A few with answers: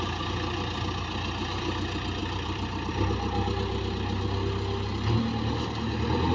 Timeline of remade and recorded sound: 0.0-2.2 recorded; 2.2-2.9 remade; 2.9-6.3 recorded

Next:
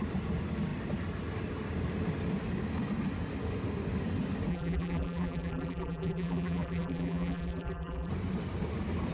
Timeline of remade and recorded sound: 0.0-4.5 recorded; 4.5-8.1 remade; 8.1-9.1 recorded